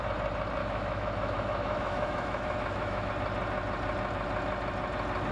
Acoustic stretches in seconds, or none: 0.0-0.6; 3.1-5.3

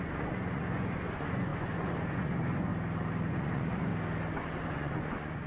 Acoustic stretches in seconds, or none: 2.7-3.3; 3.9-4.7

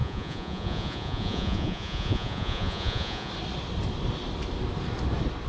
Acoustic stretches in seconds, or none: 3.3-5.5

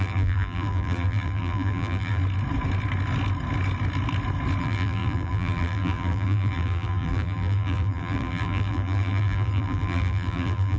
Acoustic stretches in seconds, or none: 2.2-4.6

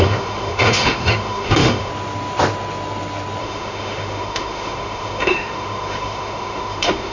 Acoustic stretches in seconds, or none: 1.9-3.4

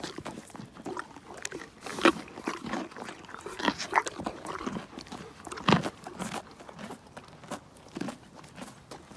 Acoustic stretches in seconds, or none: 0.0-9.2

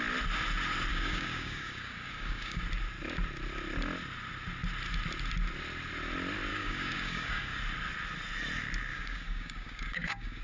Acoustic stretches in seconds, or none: 0.0-0.9; 2.6-6.5; 7.6-8.9

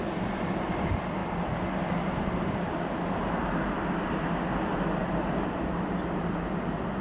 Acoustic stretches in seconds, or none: 0.0-7.0